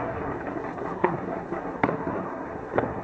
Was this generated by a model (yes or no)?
yes